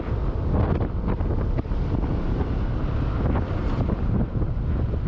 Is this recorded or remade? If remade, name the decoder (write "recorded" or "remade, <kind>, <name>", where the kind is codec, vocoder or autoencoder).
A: recorded